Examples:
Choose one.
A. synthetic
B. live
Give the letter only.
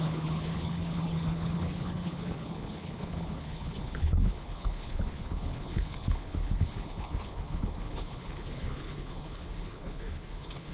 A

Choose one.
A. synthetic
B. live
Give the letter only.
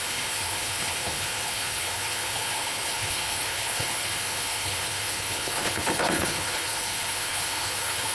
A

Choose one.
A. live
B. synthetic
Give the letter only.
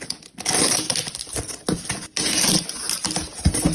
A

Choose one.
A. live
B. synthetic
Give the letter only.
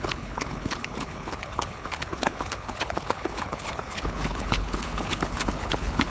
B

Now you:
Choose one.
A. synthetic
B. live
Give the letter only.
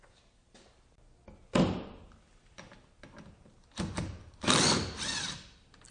B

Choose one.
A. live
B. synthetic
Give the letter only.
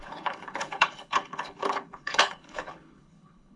B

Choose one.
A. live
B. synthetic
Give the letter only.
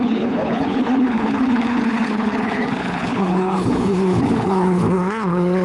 B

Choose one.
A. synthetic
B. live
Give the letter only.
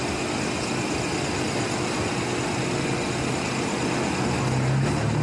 B